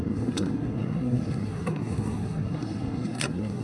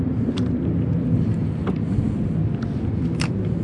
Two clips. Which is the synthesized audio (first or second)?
first